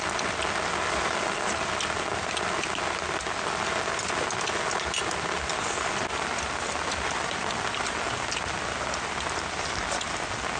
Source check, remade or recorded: recorded